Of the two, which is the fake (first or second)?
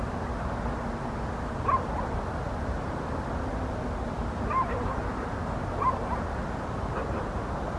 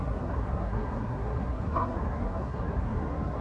second